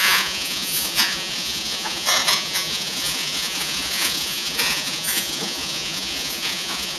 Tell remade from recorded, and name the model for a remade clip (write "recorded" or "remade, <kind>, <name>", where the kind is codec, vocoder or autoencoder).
remade, vocoder, Vocos